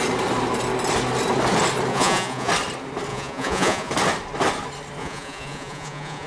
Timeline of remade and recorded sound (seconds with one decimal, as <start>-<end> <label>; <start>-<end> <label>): 0.0-1.9 recorded; 1.9-2.5 remade; 2.5-3.1 recorded; 3.1-3.9 remade; 3.9-5.0 recorded; 5.0-6.3 remade